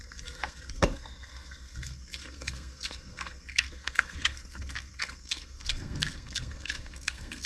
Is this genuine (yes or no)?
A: no